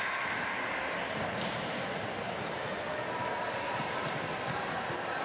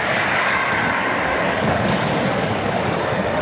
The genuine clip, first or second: first